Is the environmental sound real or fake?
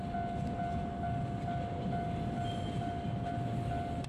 real